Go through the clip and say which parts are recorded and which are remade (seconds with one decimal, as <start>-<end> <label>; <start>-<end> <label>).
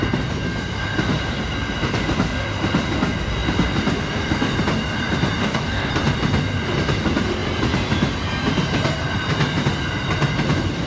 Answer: 0.0-5.4 recorded; 5.4-5.9 remade; 5.9-10.9 recorded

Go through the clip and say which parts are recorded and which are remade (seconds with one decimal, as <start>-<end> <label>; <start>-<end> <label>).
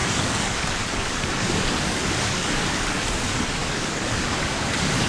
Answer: 0.0-5.1 remade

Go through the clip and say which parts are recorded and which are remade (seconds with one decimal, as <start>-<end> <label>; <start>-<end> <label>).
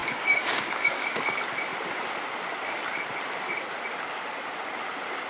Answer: 0.0-1.2 remade; 1.2-5.3 recorded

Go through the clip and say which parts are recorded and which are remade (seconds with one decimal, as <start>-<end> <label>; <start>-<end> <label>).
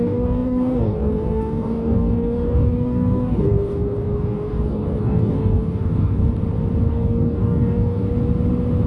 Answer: 0.0-6.2 remade; 6.2-6.9 recorded; 6.9-8.1 remade; 8.1-8.9 recorded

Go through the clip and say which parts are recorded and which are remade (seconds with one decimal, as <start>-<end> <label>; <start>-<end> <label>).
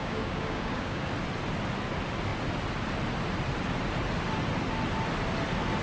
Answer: 0.0-1.1 remade; 1.1-5.8 recorded